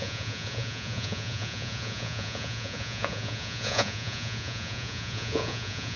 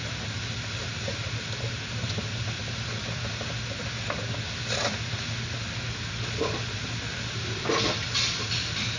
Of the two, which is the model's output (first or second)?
first